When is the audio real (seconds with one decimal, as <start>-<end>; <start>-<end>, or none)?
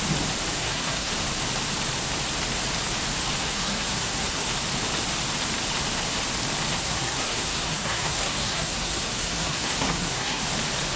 0.0-0.6; 1.1-3.4; 4.5-6.8; 10.4-11.0